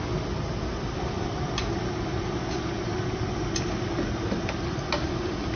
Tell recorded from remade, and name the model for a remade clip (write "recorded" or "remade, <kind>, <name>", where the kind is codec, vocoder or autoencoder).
recorded